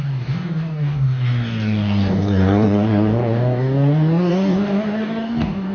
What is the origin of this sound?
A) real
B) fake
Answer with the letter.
B